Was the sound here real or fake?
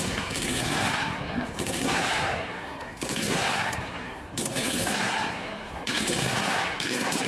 fake